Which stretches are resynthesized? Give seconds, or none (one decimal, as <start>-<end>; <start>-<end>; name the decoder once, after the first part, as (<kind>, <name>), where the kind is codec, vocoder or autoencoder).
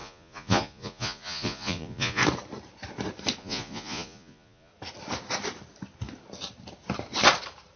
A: 0.0-2.2 (vocoder, Vocos); 3.4-4.7